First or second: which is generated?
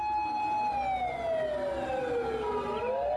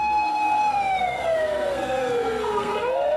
second